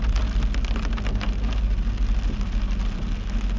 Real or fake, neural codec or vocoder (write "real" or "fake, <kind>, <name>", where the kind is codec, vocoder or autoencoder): real